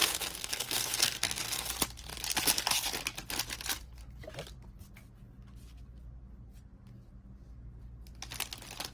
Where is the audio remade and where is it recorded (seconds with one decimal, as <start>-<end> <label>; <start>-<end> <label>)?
0.0-1.7 remade; 1.7-8.9 recorded